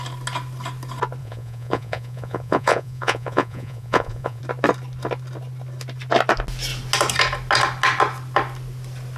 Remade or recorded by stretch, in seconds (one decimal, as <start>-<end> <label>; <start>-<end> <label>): 0.0-1.2 recorded; 1.2-4.4 remade; 4.4-9.2 recorded